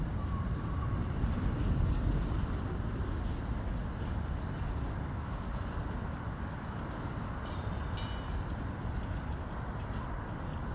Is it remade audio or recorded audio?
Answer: recorded